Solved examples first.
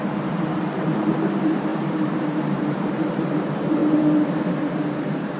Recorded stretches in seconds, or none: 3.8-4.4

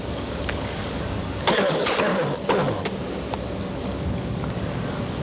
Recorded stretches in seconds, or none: 2.1-3.8

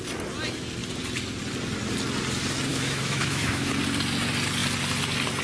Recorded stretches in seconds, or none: 0.0-2.7; 3.7-5.4

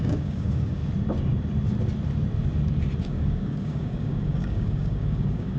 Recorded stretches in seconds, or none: 0.8-3.0

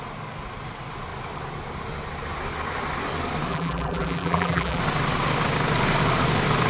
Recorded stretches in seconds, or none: 0.0-3.5; 4.8-6.7

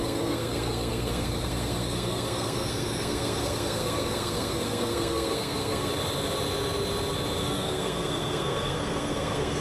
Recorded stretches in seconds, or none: 5.9-7.4

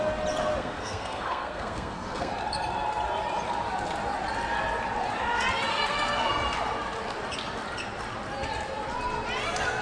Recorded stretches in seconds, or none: 0.0-0.6; 2.3-5.7; 6.3-9.8

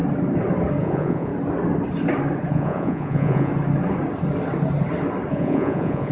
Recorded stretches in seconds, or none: 0.0-0.8; 1.3-2.5; 3.5-5.3